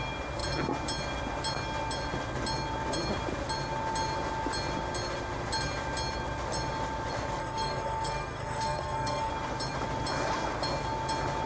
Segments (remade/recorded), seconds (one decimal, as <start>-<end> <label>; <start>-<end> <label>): 0.0-7.4 recorded; 7.4-9.3 remade; 9.3-11.5 recorded

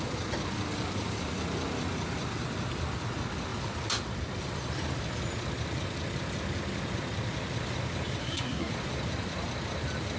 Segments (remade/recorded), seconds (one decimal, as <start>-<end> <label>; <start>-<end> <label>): 0.0-8.2 recorded; 8.2-8.7 remade; 8.7-10.2 recorded

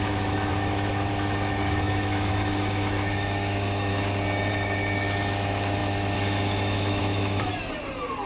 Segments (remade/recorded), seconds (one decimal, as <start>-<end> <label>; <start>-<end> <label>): 0.0-3.9 remade; 3.9-4.5 recorded; 4.5-7.5 remade; 7.5-8.3 recorded

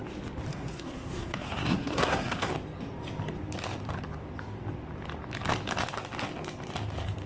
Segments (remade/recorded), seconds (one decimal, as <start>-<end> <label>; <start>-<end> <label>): 0.0-0.5 recorded; 0.5-2.5 remade; 2.5-7.3 recorded